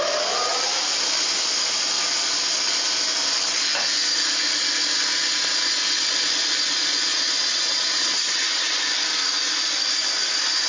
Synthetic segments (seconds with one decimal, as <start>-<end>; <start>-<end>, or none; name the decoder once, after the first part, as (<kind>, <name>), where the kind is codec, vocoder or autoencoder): 7.1-8.8 (vocoder, WaveNeXt)